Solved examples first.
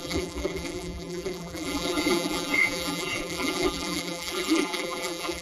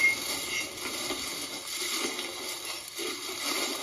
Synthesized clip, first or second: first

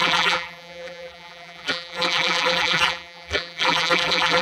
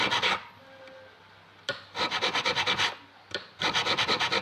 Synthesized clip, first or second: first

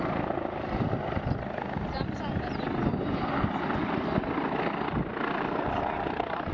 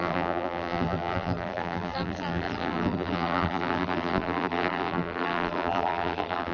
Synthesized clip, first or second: second